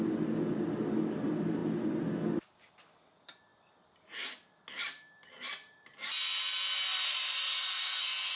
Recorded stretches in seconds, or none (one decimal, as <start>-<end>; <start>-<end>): 0.0-8.4